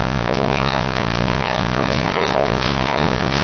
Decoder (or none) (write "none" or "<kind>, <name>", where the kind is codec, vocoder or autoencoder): vocoder, Vocos